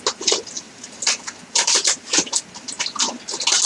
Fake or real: real